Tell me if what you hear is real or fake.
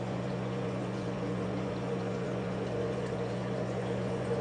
fake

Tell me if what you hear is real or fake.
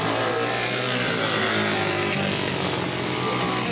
real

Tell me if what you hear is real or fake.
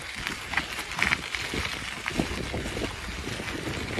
real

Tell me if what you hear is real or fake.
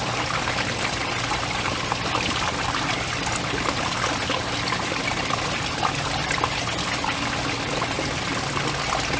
real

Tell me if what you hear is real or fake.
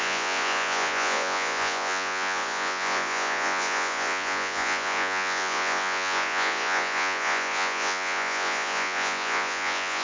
fake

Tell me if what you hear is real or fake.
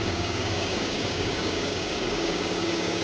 fake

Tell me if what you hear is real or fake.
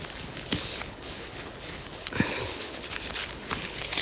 fake